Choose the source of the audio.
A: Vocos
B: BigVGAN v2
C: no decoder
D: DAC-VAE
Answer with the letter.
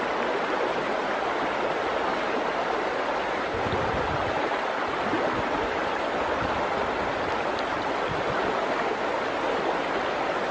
C